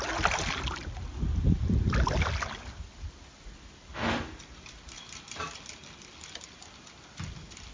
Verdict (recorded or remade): recorded